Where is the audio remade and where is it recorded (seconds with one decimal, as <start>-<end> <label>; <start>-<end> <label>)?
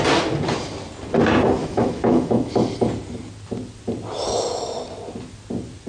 0.0-1.6 recorded; 1.6-2.5 remade; 2.5-5.9 recorded